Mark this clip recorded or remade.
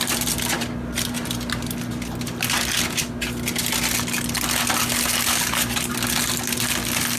recorded